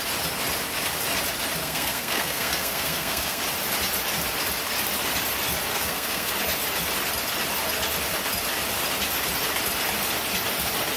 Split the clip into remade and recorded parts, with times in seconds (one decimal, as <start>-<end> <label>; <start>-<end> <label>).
0.0-1.6 recorded; 1.6-3.4 remade; 3.4-5.7 recorded; 5.7-6.3 remade; 6.3-11.0 recorded